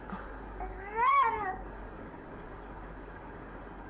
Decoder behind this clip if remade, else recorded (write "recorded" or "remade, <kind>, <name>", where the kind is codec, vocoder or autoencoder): remade, codec, DAC